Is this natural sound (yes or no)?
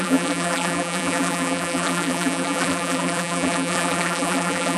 no